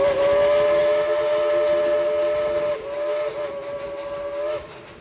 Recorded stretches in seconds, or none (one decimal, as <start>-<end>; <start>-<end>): 0.0-5.0